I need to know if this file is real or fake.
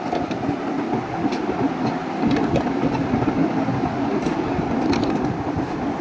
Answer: real